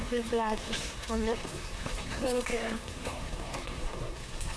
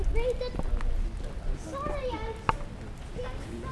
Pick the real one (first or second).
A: second